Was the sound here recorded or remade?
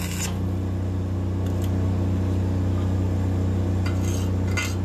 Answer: recorded